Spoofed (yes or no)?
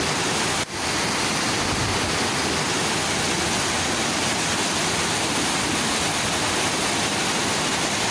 no